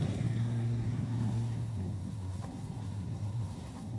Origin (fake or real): fake